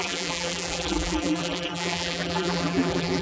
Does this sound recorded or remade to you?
remade